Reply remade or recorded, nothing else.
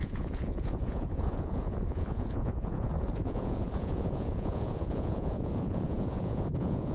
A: remade